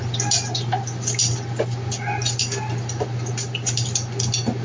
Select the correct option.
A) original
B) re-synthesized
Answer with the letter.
A